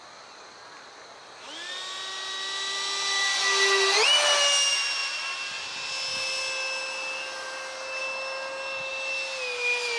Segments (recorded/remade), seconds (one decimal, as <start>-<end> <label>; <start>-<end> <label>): 0.0-10.0 recorded